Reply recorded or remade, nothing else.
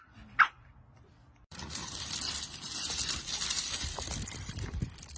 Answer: remade